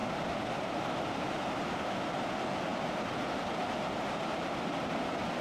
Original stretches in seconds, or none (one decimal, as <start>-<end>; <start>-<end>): 1.4-5.4